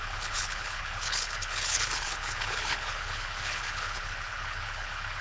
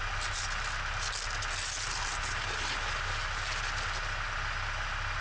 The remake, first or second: first